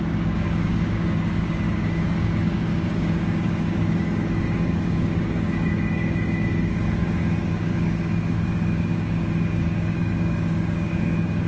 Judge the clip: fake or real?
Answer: fake